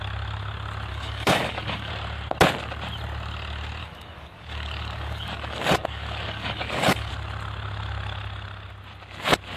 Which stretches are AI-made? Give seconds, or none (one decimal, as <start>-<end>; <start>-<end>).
0.9-1.9; 3.8-7.1